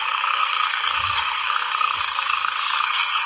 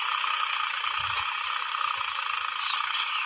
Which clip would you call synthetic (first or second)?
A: first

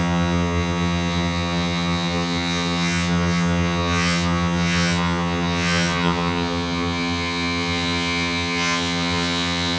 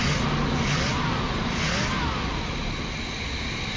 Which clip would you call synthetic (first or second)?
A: first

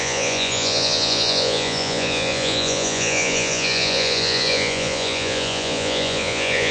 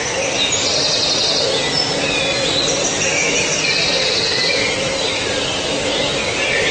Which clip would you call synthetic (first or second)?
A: first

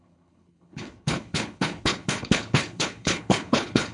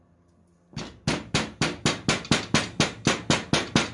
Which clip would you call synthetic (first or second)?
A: first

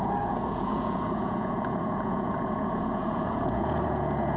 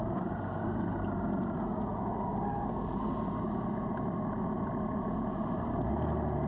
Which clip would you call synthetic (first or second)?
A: first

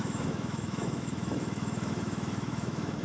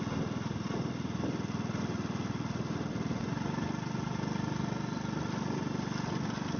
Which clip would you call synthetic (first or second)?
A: first